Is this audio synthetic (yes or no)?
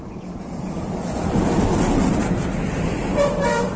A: yes